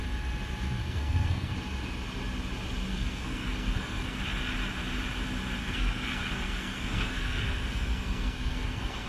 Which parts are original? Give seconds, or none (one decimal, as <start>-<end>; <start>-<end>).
0.0-0.8; 1.5-2.9; 4.2-5.6